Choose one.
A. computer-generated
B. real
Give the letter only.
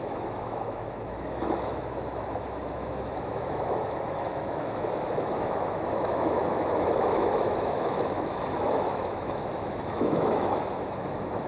A